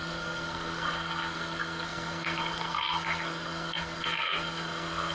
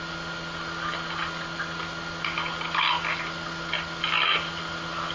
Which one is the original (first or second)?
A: second